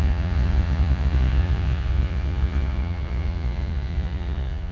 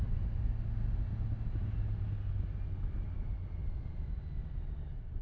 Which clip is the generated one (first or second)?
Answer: first